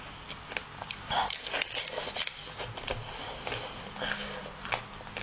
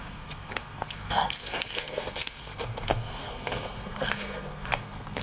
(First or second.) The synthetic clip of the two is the second